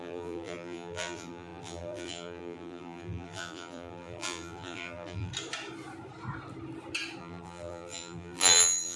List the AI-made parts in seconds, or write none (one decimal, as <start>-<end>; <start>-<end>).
0.0-5.3; 7.2-9.0